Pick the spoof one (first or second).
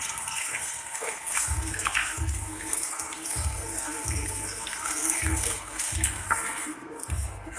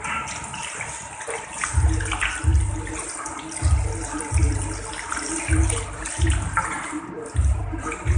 first